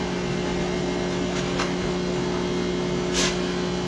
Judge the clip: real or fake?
real